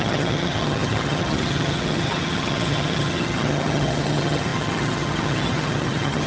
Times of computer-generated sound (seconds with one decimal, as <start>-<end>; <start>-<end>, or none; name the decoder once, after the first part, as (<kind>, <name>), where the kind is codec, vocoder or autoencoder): 0.0-6.3 (vocoder, HiFi-GAN)